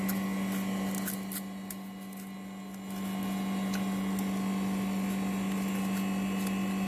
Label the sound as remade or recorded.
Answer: recorded